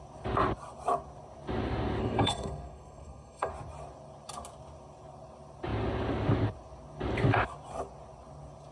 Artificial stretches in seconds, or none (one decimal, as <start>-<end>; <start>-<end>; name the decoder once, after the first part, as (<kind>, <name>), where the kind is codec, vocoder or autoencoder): 2.0-3.5 (codec, SNAC)